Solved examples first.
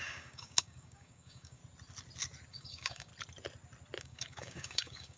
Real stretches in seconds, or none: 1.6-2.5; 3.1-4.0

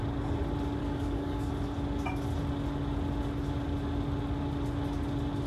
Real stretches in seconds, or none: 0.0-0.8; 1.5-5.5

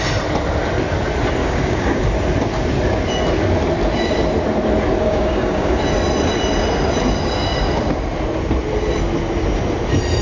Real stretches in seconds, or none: 0.0-1.4; 2.0-5.0; 5.8-10.2

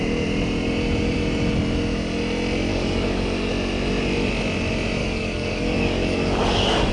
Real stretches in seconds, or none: 0.0-2.7; 3.5-5.0

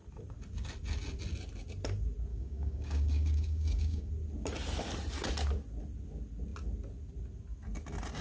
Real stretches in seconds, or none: 0.0-2.3; 4.1-8.2

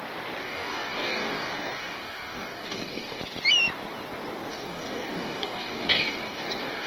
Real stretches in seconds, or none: 0.0-0.4; 3.2-4.5